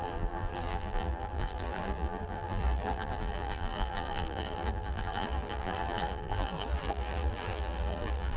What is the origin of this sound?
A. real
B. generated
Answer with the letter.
B